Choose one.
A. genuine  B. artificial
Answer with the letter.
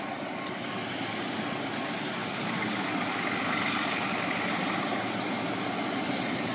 B